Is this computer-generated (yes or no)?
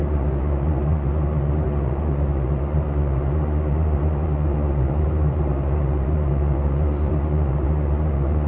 yes